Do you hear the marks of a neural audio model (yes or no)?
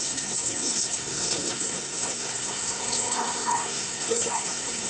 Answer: yes